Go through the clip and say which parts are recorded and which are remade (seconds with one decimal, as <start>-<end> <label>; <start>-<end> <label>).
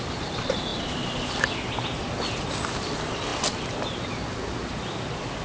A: 0.0-5.4 recorded